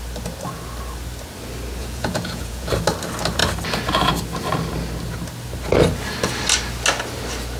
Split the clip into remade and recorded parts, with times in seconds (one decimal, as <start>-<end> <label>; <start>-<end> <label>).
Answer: 0.0-1.8 recorded; 1.8-2.7 remade; 2.7-7.6 recorded